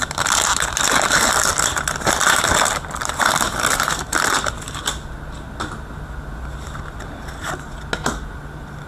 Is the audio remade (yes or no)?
no